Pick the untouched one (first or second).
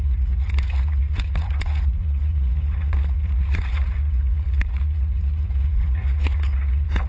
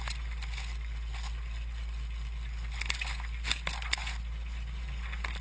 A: second